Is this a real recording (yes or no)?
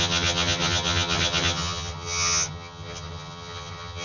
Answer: no